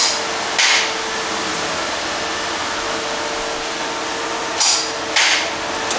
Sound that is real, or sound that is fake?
real